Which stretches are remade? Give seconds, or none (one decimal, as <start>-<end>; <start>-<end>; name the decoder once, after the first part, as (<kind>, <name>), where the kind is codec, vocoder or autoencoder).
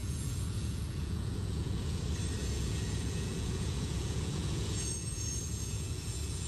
0.0-2.0 (vocoder, Vocos); 2.4-6.5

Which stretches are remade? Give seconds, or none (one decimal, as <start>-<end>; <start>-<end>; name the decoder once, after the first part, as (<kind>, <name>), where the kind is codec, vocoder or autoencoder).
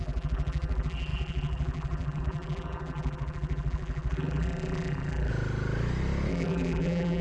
0.0-5.3 (vocoder, BigVGAN v2); 6.3-7.2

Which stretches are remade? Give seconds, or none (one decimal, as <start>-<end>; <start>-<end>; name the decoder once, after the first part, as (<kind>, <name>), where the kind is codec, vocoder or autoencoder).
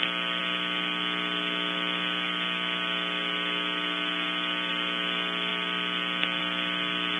none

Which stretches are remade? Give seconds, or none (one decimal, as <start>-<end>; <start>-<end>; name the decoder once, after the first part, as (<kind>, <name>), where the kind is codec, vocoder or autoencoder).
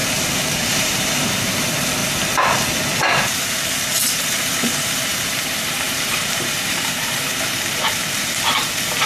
0.0-2.0 (vocoder, BigVGAN v2); 3.0-9.1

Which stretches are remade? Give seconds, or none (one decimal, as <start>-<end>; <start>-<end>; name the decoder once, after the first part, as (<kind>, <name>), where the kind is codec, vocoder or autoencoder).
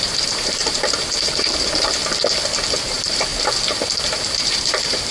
0.0-2.0 (vocoder, BigVGAN v2); 2.8-3.3; 4.0-5.1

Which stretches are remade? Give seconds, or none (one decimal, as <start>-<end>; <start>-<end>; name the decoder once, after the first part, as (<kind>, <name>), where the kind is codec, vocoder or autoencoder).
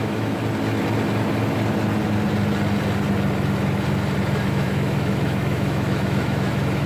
0.0-0.4 (autoencoder, DAC-VAE); 4.5-6.9